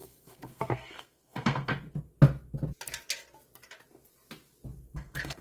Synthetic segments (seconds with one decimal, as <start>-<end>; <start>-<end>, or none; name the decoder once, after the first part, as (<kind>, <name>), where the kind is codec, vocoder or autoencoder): 0.0-1.7 (codec, SNAC); 4.9-5.4